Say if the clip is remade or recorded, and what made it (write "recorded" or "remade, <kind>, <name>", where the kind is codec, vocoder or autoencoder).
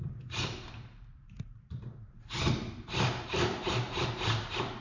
remade, vocoder, BigVGAN v2